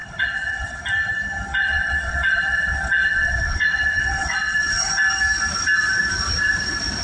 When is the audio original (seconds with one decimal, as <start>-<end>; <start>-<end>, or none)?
0.8-1.6; 4.9-7.0